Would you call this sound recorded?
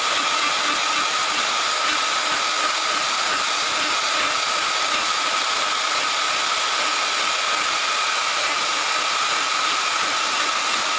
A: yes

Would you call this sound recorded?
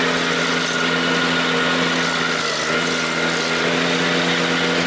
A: yes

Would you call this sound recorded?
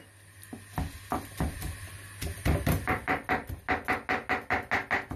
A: yes